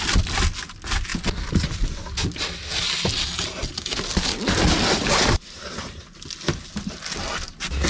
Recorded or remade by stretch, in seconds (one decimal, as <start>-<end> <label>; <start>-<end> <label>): 0.0-7.9 recorded

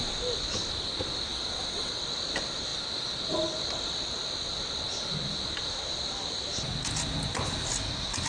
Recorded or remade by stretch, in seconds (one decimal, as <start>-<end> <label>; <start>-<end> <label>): 0.0-1.3 recorded; 1.3-2.0 remade; 2.0-8.3 recorded

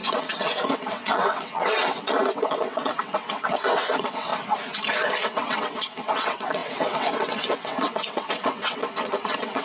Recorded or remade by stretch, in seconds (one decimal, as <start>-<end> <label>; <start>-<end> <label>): 0.0-4.3 remade; 4.3-5.2 recorded; 5.2-9.6 remade

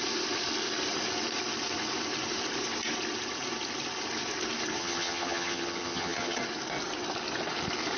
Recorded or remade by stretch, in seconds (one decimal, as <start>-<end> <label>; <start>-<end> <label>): 0.0-4.8 recorded; 4.8-6.4 remade; 6.4-8.0 recorded